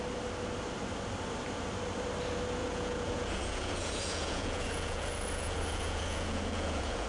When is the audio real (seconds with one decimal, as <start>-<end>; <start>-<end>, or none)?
0.0-2.6